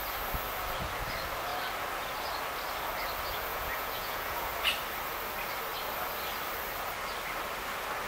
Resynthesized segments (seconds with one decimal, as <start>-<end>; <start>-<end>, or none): 3.5-4.5